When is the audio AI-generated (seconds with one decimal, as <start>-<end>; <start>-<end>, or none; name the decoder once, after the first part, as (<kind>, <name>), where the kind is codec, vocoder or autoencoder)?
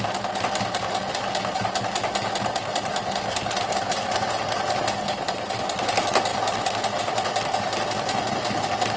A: 6.3-7.0 (vocoder, BigVGAN v2)